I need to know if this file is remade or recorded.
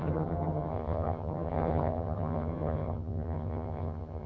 remade